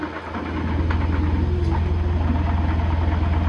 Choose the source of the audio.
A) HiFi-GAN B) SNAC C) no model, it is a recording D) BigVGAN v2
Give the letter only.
C